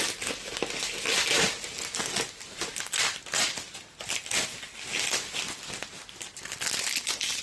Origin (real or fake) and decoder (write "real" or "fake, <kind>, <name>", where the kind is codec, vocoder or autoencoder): real